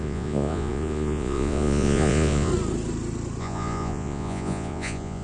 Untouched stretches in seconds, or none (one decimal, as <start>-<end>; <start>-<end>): 2.5-3.4